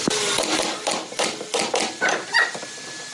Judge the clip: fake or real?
real